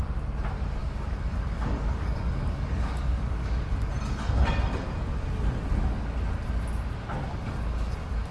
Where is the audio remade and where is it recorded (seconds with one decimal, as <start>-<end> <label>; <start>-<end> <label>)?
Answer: 0.0-0.8 recorded; 0.8-3.9 remade; 3.9-7.3 recorded; 7.3-8.3 remade